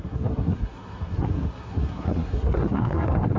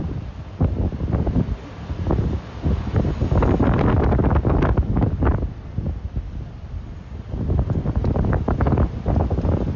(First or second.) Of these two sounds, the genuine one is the second